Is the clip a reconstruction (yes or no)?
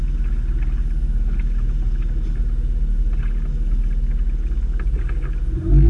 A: no